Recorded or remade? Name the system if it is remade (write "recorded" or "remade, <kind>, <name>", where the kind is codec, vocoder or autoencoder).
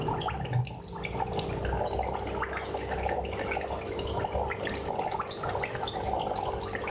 recorded